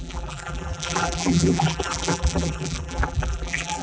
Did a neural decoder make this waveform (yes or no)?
yes